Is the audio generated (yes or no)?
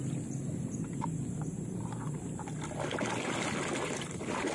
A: no